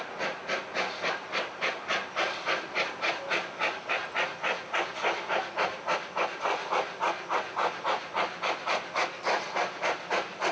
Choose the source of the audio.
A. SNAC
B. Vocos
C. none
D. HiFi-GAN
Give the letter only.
C